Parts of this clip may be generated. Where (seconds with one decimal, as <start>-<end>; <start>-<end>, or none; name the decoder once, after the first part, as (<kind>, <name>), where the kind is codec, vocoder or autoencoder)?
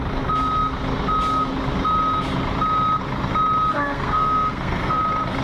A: 3.7-5.0 (codec, SNAC)